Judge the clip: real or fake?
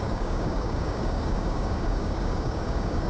fake